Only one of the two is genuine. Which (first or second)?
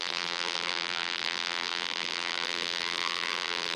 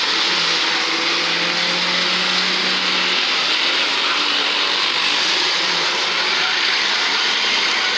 second